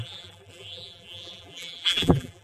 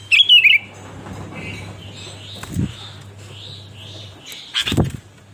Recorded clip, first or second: second